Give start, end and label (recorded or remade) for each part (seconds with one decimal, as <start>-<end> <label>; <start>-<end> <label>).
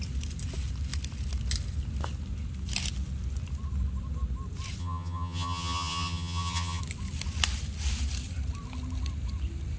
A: 0.0-4.8 recorded; 4.8-6.8 remade; 6.8-9.8 recorded